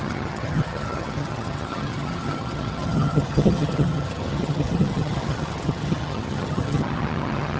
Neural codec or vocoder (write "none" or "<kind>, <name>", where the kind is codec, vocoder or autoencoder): vocoder, HiFi-GAN